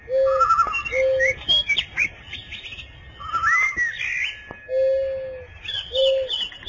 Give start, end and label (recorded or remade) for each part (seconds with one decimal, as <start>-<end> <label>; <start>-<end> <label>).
0.0-6.7 recorded